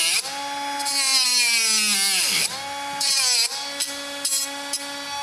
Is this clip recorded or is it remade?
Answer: recorded